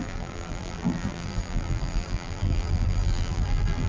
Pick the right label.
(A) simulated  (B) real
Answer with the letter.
A